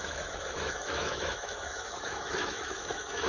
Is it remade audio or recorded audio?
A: remade